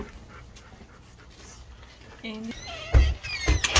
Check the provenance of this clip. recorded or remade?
recorded